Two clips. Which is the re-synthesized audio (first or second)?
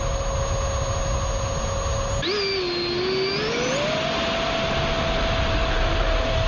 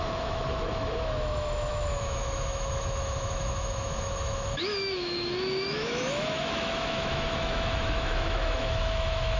second